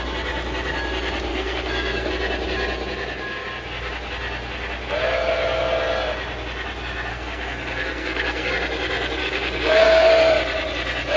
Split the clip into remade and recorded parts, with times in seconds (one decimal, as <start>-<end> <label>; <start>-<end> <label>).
0.0-1.3 recorded; 1.3-2.1 remade; 2.1-7.1 recorded; 7.1-8.5 remade; 8.5-9.2 recorded; 9.2-10.1 remade; 10.1-11.2 recorded